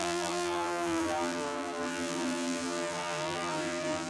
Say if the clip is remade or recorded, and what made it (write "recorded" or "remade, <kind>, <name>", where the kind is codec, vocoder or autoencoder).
remade, vocoder, BigVGAN v2